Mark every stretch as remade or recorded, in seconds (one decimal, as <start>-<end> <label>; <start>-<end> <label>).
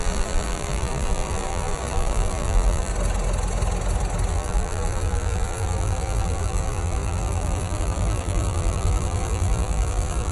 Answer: 0.0-2.9 remade; 2.9-4.3 recorded; 4.3-10.3 remade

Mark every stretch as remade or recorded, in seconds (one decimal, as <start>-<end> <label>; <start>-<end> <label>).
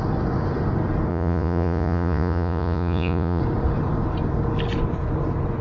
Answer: 0.0-1.1 recorded; 1.1-3.4 remade; 3.4-5.6 recorded